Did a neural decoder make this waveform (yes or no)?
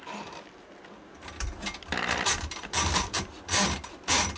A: no